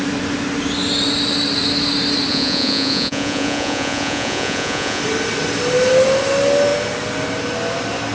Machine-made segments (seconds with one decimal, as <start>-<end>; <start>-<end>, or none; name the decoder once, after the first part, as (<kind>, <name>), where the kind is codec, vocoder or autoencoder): 2.3-5.0 (vocoder, Vocos)